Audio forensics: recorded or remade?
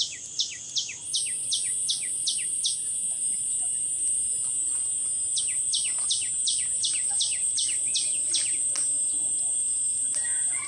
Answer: recorded